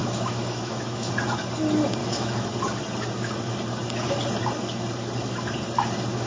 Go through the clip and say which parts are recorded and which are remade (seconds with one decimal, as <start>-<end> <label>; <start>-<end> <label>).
0.0-1.1 remade; 1.1-2.0 recorded; 2.0-2.5 remade; 2.5-6.3 recorded